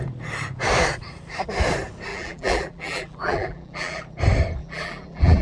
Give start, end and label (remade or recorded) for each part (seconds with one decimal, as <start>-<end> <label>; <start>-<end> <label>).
0.0-2.1 recorded; 2.1-4.0 remade; 4.0-4.6 recorded; 4.6-5.4 remade